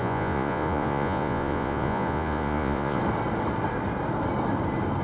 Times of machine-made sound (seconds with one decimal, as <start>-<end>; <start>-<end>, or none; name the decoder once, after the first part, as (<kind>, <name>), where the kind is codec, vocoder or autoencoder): 0.0-3.0 (vocoder, Vocos)